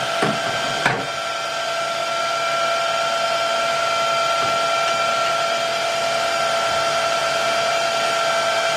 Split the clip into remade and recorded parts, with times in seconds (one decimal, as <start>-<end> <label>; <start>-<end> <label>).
0.0-7.2 recorded; 7.2-7.7 remade; 7.7-8.8 recorded